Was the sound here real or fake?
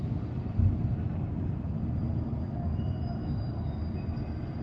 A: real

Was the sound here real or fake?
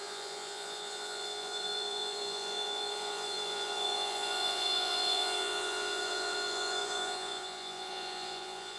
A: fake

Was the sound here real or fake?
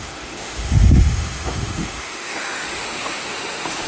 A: fake